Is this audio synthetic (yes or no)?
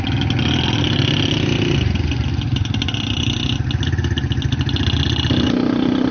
no